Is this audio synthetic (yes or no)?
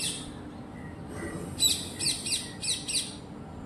no